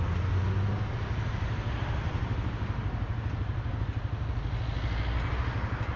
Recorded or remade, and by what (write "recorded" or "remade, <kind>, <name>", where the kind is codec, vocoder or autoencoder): recorded